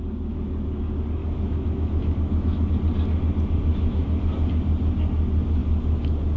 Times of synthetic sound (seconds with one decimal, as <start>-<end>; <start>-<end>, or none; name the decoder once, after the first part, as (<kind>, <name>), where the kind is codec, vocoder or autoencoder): 1.2-2.7 (autoencoder, DAC-VAE); 3.7-4.5